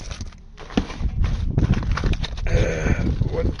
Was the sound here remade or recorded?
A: recorded